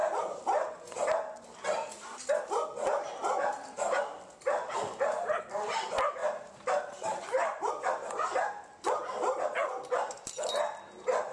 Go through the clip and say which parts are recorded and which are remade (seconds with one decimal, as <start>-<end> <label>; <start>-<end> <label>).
0.0-6.2 recorded; 6.2-7.7 remade; 7.7-11.3 recorded